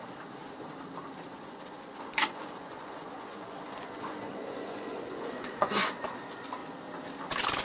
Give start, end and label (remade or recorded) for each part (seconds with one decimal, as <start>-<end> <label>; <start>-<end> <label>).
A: 0.0-1.3 recorded; 1.3-5.9 remade; 5.9-7.6 recorded